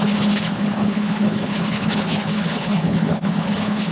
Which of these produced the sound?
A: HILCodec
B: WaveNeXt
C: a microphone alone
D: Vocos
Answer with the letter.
A